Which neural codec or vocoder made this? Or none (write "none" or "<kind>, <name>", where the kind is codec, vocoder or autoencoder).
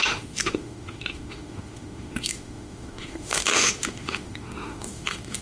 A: autoencoder, DAC-VAE